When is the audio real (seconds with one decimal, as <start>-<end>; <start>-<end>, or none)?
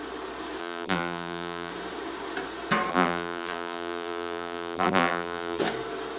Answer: 0.0-0.6; 1.7-2.9; 5.6-6.2